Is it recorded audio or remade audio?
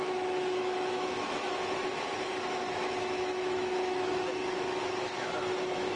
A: remade